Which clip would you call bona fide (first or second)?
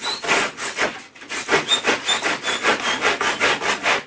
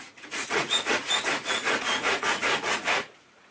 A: first